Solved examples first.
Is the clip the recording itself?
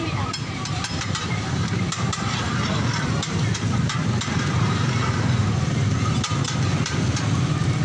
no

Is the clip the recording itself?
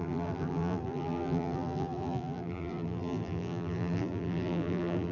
no